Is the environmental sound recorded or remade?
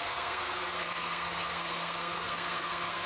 remade